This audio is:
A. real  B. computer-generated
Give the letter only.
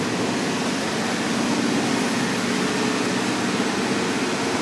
A